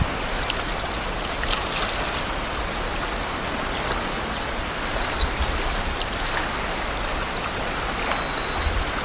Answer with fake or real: real